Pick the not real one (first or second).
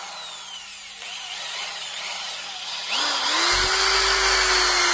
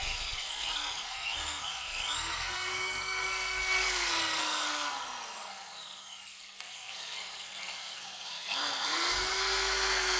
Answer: second